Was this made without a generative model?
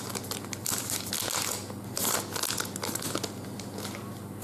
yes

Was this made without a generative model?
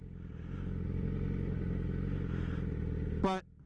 yes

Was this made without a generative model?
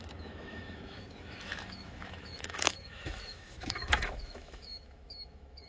no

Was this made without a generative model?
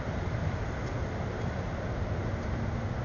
yes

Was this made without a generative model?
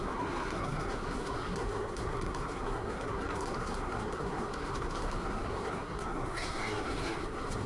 no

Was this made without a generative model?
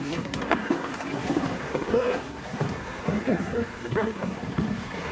no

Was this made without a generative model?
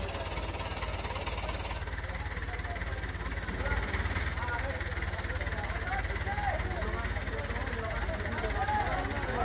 yes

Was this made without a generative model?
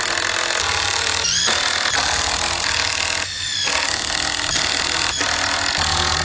yes